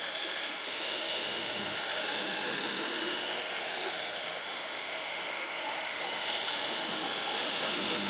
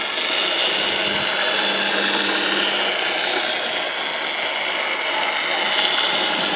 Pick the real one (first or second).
second